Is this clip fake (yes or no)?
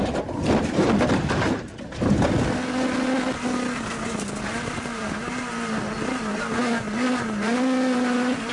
yes